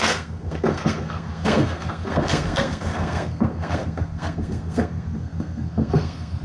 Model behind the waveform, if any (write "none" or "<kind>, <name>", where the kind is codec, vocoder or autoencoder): codec, SNAC